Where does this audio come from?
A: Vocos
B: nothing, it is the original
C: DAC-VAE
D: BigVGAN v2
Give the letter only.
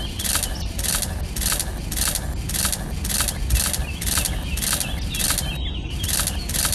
B